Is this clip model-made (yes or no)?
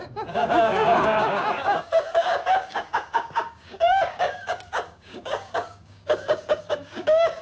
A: yes